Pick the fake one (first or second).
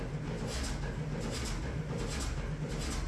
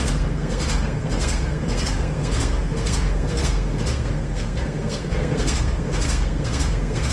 second